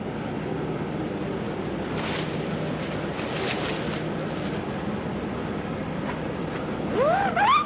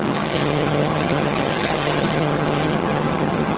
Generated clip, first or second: second